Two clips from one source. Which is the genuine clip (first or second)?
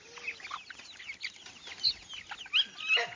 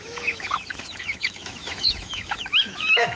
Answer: first